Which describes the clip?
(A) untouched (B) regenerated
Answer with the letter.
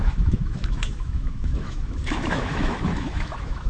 B